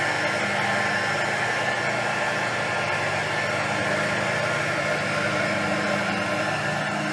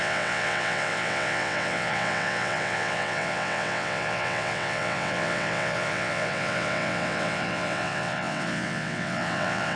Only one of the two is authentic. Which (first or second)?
first